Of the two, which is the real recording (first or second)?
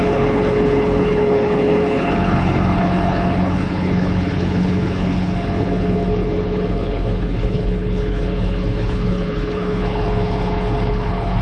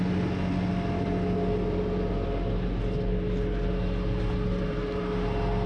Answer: second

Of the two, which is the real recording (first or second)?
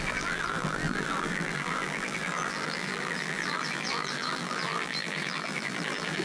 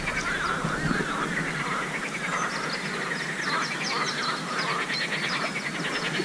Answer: second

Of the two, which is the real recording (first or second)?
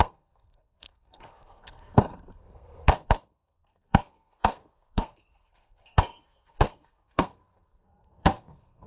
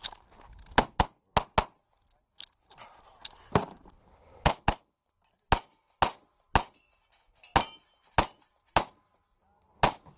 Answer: second